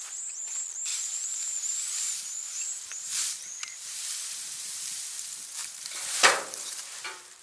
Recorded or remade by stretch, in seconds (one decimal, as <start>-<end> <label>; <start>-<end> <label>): 0.0-0.9 recorded; 0.9-5.0 remade; 5.0-5.6 recorded; 5.6-7.0 remade; 7.0-7.4 recorded